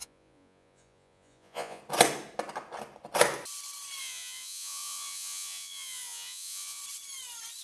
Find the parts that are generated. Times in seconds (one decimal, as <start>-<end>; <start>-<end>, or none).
0.0-1.8; 4.0-6.8